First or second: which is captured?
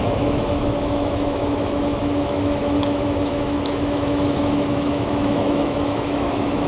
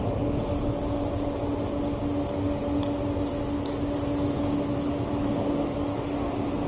second